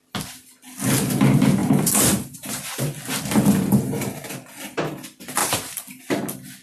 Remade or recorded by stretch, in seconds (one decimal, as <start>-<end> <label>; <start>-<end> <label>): 0.0-1.6 recorded; 1.6-2.7 remade; 2.7-5.4 recorded; 5.4-6.0 remade; 6.0-6.6 recorded